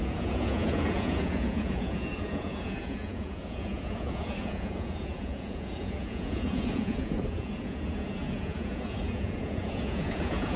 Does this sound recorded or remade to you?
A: remade